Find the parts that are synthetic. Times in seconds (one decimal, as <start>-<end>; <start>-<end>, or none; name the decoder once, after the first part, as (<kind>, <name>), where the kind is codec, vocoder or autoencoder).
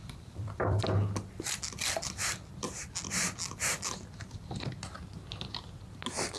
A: 0.0-0.8 (vocoder, BigVGAN v2); 1.8-2.8